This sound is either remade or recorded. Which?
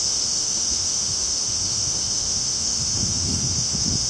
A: remade